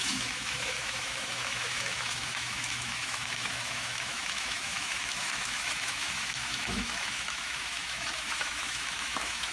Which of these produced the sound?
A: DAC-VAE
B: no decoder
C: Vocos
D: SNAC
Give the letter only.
A